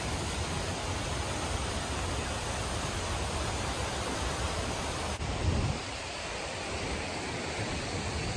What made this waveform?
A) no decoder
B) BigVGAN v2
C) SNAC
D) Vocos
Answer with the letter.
B